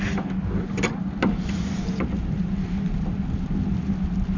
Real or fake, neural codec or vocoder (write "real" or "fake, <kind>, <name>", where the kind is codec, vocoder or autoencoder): real